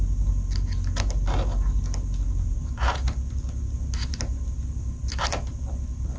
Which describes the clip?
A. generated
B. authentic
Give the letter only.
B